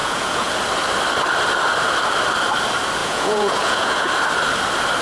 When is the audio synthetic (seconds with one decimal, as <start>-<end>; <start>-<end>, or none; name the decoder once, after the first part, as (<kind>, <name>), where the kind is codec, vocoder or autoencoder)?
0.0-0.6 (vocoder, Vocos); 3.0-4.1